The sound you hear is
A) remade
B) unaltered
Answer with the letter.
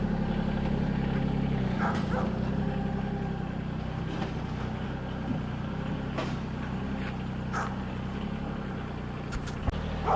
B